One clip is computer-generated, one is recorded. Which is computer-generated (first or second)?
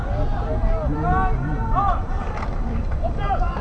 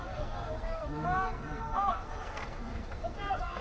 second